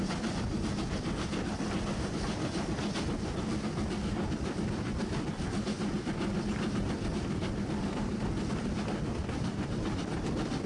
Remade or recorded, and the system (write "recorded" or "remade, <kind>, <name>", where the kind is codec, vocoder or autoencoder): recorded